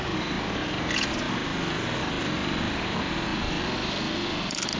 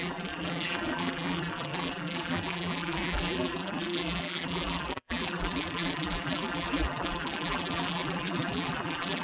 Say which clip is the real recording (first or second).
first